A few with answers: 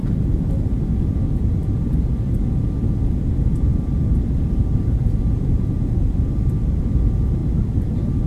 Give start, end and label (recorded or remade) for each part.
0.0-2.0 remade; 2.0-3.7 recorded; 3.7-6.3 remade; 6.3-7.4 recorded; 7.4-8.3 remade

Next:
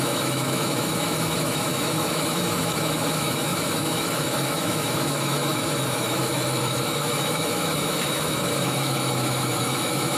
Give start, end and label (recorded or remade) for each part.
0.0-10.2 remade